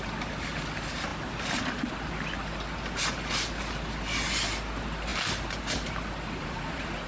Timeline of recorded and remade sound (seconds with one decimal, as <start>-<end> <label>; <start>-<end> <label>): 0.0-6.4 recorded; 6.4-7.1 remade